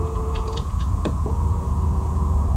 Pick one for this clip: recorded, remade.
remade